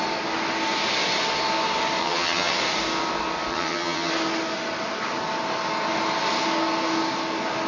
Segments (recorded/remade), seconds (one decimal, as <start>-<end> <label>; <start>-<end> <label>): 0.0-2.0 recorded; 2.0-2.6 remade; 2.6-3.5 recorded; 3.5-4.1 remade; 4.1-7.7 recorded